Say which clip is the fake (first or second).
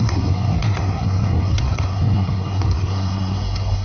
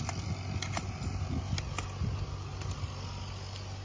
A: first